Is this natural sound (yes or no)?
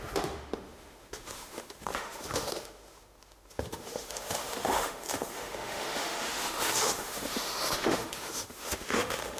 no